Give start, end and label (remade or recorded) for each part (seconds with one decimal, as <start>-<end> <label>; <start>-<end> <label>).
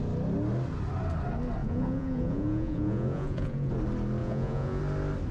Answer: 0.0-1.6 recorded; 1.6-3.7 remade; 3.7-4.2 recorded; 4.2-4.8 remade; 4.8-5.3 recorded